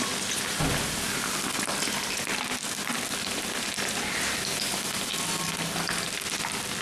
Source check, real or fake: real